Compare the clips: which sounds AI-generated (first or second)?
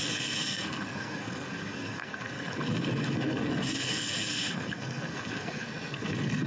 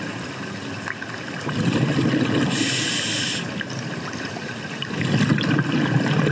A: first